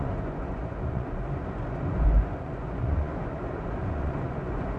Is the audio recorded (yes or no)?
no